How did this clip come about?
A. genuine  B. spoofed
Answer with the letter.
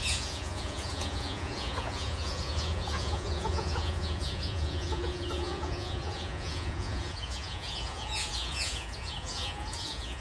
B